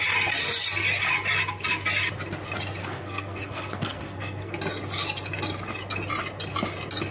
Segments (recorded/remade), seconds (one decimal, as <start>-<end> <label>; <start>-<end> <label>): 0.0-2.8 recorded; 2.8-4.5 remade; 4.5-7.1 recorded